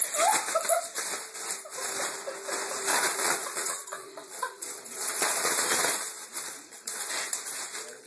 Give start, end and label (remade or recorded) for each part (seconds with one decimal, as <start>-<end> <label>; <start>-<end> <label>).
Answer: 0.0-2.9 recorded; 2.9-7.1 remade; 7.1-8.1 recorded